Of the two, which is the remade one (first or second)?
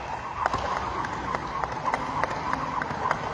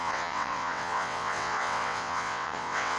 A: second